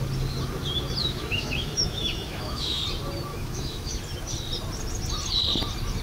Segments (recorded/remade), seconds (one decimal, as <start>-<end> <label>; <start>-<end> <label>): 0.0-1.0 recorded; 1.0-2.8 remade; 2.8-3.3 recorded; 3.3-4.0 remade; 4.0-6.0 recorded